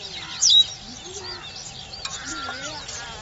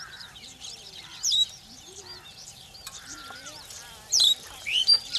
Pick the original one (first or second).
first